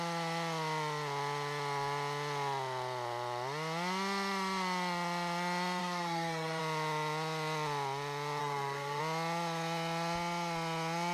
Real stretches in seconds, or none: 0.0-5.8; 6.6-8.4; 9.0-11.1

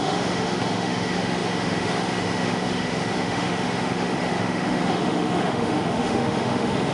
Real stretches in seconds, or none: none

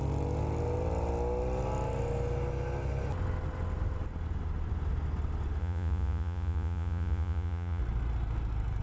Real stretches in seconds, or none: 0.0-5.6; 7.8-8.8

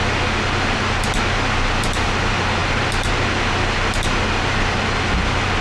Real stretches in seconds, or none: 0.0-5.6